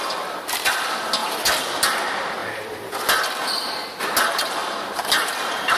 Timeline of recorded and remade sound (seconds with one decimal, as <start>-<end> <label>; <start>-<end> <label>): 0.0-2.4 recorded; 2.4-2.9 remade; 2.9-4.6 recorded; 4.6-5.3 remade; 5.3-5.8 recorded